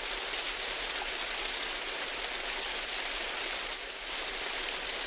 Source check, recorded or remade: recorded